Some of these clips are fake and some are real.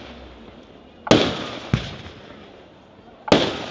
real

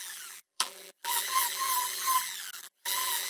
fake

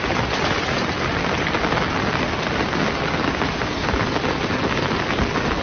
real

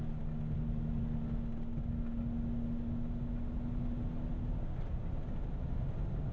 real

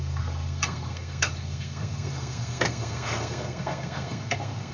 fake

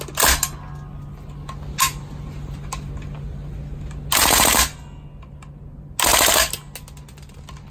real